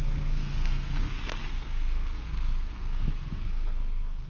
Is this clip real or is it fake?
fake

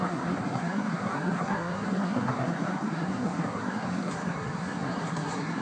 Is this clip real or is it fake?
fake